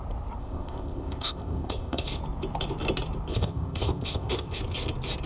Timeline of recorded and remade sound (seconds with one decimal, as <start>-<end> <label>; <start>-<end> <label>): 0.0-0.4 recorded; 0.4-2.2 remade; 2.2-3.3 recorded; 3.3-4.6 remade; 4.6-5.3 recorded

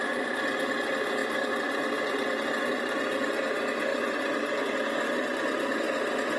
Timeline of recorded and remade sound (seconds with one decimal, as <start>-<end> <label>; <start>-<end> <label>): 0.0-3.9 recorded; 3.9-4.6 remade; 4.6-5.3 recorded; 5.3-6.4 remade

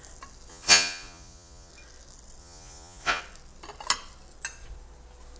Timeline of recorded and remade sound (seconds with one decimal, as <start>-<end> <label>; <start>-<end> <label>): 0.0-0.5 recorded; 0.5-1.7 remade; 1.7-2.4 recorded; 2.4-3.2 remade; 3.2-5.4 recorded

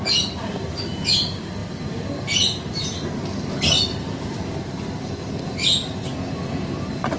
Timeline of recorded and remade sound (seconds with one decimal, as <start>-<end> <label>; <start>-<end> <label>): 0.0-7.2 recorded